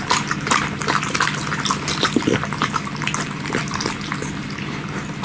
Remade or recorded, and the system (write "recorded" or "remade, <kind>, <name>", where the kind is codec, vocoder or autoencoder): recorded